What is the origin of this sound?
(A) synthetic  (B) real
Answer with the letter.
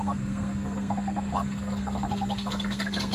A